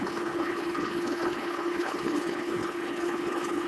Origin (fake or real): fake